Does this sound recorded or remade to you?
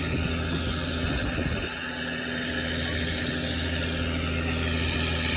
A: recorded